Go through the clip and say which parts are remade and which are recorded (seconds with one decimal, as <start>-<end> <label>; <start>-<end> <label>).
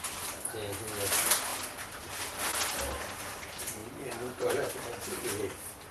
0.0-5.9 recorded